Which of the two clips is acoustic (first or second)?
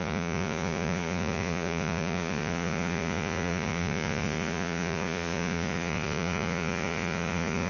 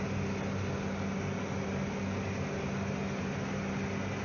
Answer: second